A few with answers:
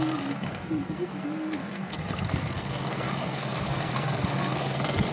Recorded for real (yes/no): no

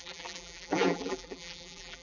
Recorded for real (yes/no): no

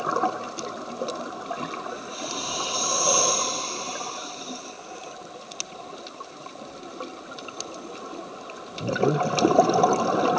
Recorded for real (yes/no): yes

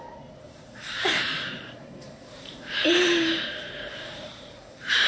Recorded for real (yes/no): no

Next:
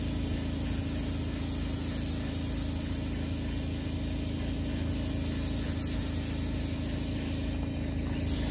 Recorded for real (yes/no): yes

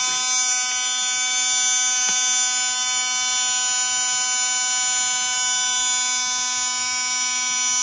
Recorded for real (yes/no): yes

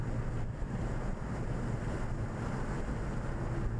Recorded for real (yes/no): yes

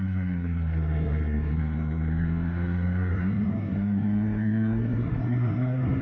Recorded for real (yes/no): no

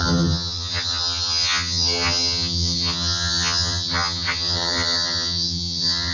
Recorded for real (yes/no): no